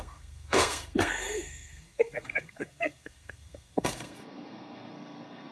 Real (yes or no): no